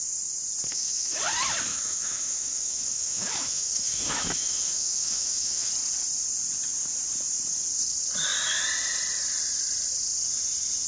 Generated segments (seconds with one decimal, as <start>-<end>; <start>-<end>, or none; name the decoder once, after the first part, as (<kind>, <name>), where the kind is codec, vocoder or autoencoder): 0.7-1.2 (autoencoder, DAC-VAE); 1.7-5.7

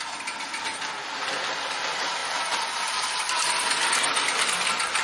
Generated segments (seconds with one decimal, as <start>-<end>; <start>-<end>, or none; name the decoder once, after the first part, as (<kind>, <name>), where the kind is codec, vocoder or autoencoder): none